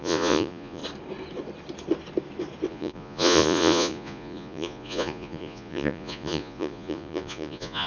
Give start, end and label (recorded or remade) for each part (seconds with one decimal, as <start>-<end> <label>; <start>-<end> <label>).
0.0-0.8 remade; 0.8-2.7 recorded; 2.7-7.9 remade